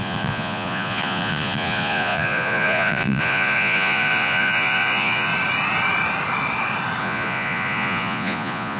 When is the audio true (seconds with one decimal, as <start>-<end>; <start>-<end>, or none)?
5.3-7.0

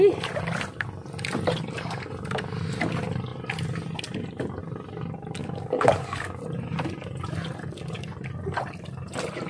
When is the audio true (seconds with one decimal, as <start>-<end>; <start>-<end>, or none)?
0.0-5.4; 6.4-9.5